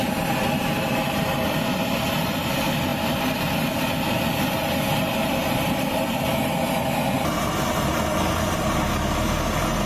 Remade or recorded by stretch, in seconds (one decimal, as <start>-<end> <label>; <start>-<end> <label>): 0.0-9.9 recorded